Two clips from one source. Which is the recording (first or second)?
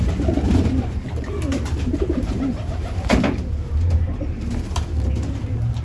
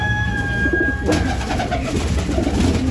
second